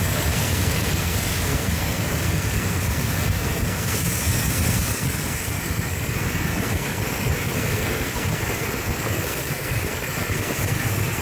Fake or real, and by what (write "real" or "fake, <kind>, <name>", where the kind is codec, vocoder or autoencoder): fake, codec, SNAC